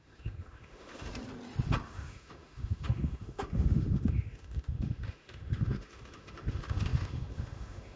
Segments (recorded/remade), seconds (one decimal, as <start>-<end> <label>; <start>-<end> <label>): 0.0-1.1 remade; 1.1-1.8 recorded; 1.8-8.0 remade